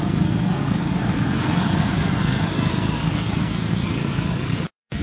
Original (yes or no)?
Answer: no